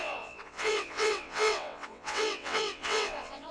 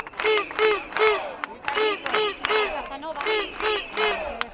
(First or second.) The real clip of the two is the second